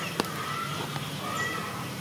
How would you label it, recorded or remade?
recorded